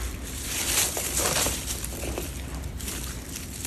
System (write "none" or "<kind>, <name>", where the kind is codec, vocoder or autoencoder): vocoder, BigVGAN v2